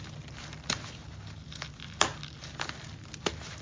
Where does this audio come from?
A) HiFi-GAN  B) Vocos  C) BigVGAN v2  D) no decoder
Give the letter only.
D